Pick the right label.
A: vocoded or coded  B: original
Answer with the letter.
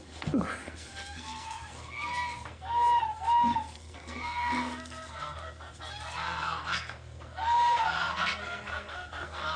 A